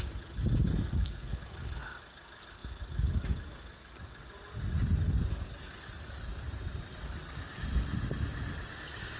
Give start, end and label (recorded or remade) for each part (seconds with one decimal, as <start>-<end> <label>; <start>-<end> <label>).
0.0-0.7 recorded; 0.7-1.4 remade; 1.4-9.2 recorded